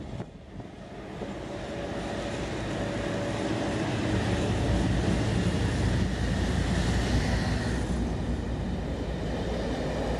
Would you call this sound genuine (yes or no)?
yes